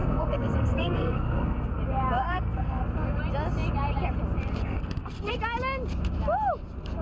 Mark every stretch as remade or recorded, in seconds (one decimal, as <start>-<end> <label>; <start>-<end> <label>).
0.0-1.8 remade; 1.8-2.2 recorded; 2.2-2.8 remade; 2.8-4.6 recorded; 4.6-5.3 remade; 5.3-7.0 recorded